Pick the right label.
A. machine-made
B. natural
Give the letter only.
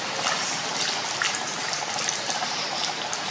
B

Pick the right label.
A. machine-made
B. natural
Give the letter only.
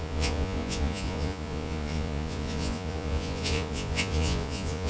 A